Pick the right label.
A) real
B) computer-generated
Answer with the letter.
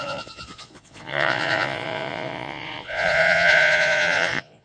B